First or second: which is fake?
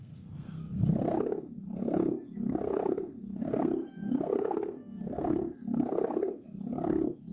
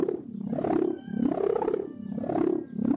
first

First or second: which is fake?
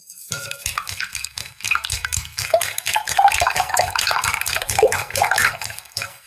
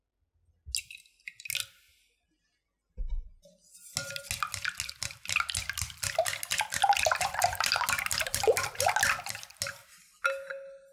first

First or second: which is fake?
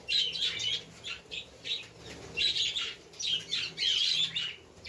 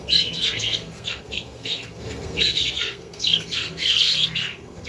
second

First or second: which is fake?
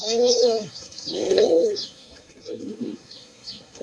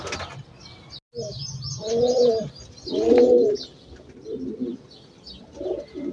first